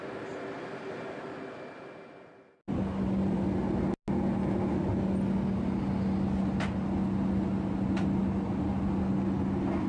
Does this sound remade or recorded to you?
recorded